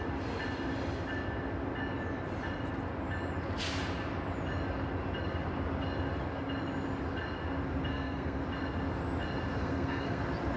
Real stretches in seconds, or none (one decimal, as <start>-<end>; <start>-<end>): 0.0-7.9; 8.4-9.6; 10.2-10.6